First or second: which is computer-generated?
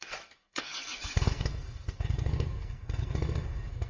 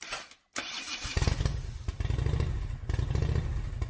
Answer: first